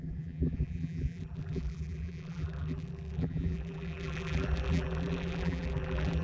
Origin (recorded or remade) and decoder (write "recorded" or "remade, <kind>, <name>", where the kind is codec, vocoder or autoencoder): remade, vocoder, BigVGAN v2